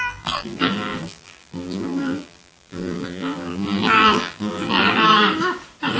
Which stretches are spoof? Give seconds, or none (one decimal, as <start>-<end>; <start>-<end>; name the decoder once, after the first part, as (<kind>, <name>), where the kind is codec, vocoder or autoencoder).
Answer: 0.0-5.1 (vocoder, BigVGAN v2)